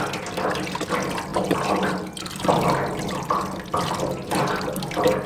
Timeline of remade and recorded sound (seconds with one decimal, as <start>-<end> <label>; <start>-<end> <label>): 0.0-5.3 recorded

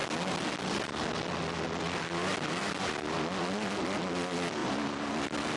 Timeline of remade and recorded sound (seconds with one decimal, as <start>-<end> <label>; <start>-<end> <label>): 0.0-4.6 recorded; 4.6-5.1 remade; 5.1-5.6 recorded

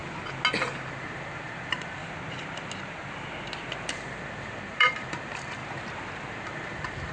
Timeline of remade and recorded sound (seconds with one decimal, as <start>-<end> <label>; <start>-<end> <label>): 0.0-0.8 recorded; 0.8-2.0 remade; 2.0-3.9 recorded; 3.9-5.6 remade; 5.6-6.3 recorded; 6.3-7.1 remade

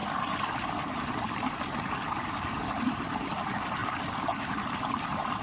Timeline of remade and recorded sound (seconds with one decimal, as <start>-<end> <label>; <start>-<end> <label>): 0.0-5.4 recorded

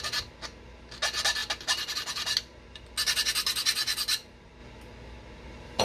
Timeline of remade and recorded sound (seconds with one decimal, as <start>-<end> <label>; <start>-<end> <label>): 0.0-2.5 recorded; 2.5-3.6 remade; 3.6-5.8 recorded

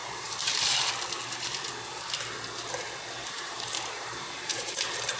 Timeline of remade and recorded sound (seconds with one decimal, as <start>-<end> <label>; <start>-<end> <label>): 0.0-0.9 remade; 0.9-3.2 recorded; 3.2-4.8 remade; 4.8-5.2 recorded